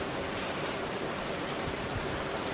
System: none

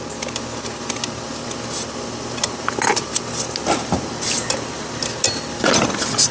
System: none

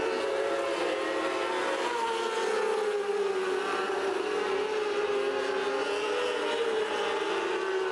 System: none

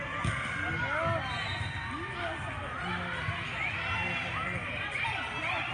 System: none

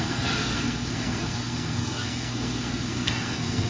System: codec, SNAC